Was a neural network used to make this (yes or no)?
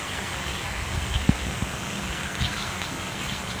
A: yes